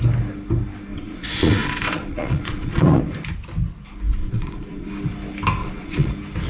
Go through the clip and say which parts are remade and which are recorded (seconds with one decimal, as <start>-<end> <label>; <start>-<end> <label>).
0.0-0.9 recorded; 0.9-3.0 remade; 3.0-4.2 recorded; 4.2-4.9 remade; 4.9-5.6 recorded; 5.6-6.1 remade; 6.1-6.5 recorded